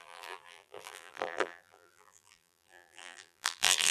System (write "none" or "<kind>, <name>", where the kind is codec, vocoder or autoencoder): vocoder, BigVGAN v2